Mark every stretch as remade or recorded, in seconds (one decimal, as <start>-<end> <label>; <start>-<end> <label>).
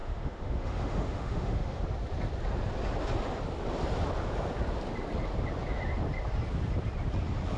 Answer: 0.0-1.8 remade; 1.8-7.6 recorded